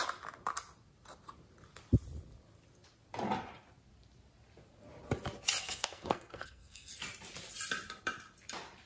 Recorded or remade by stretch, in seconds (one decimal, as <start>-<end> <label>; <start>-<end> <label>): 0.0-5.6 recorded; 5.6-6.9 remade; 6.9-8.9 recorded